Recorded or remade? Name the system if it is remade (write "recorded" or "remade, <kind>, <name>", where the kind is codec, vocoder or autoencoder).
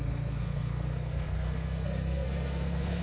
remade, codec, SNAC